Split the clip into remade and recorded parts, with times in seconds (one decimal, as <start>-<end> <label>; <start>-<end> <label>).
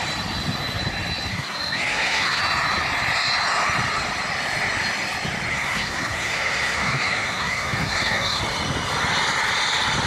0.0-1.3 recorded; 1.3-2.4 remade; 2.4-5.5 recorded; 5.5-8.4 remade; 8.4-10.1 recorded